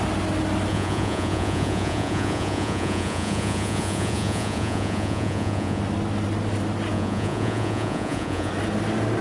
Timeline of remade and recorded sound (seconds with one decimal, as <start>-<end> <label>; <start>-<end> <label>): 0.0-0.7 recorded; 0.7-5.8 remade; 5.8-6.9 recorded; 6.9-8.5 remade; 8.5-9.2 recorded